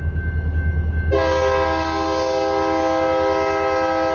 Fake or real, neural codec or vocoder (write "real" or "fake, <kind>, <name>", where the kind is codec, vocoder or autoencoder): real